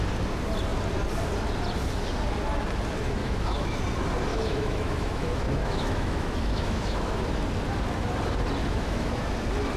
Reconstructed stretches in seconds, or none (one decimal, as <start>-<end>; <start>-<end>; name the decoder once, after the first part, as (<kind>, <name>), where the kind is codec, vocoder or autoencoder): 3.2-3.8 (autoencoder, DAC-VAE); 4.3-7.2; 8.6-9.2